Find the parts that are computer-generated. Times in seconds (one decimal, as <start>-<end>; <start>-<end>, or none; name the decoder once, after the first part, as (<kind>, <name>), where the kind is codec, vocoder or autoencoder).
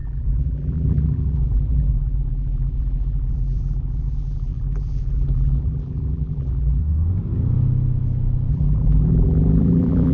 0.0-6.8 (vocoder, BigVGAN v2); 8.5-10.1